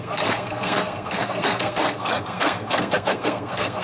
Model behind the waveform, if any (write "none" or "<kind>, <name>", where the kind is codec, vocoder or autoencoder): codec, SNAC